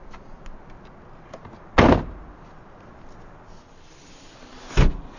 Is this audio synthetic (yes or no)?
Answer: no